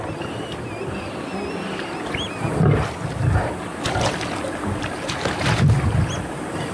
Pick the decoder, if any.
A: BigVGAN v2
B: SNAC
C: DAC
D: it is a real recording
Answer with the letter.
D